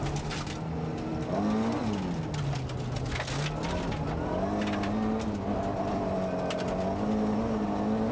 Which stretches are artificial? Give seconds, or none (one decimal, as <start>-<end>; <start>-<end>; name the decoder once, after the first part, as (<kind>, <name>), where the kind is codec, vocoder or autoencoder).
none